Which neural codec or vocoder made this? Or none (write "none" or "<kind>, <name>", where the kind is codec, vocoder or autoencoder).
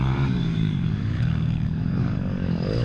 codec, DAC